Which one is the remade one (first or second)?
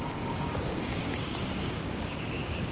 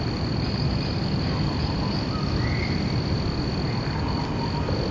first